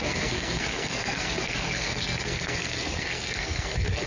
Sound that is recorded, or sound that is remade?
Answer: remade